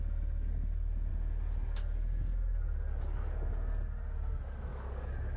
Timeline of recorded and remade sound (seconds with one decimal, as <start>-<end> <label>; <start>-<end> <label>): 0.0-5.4 recorded